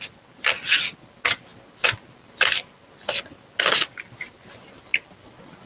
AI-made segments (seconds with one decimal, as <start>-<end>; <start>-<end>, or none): none